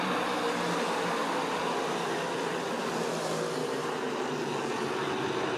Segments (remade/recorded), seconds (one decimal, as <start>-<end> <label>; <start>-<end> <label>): 0.0-3.6 recorded; 3.6-4.3 remade; 4.3-5.6 recorded